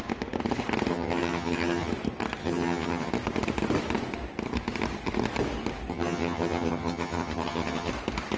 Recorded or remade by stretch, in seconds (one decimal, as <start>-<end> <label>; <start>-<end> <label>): 0.0-0.9 recorded; 0.9-1.9 remade; 1.9-2.4 recorded; 2.4-3.1 remade; 3.1-5.9 recorded; 5.9-7.9 remade; 7.9-8.4 recorded